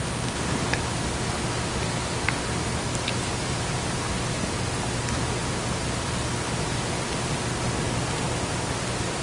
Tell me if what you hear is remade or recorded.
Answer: recorded